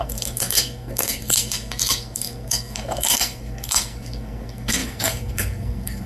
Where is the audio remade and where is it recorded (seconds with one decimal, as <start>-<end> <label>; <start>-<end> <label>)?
0.0-6.1 remade